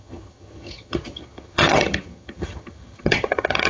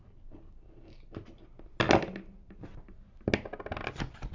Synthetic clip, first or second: first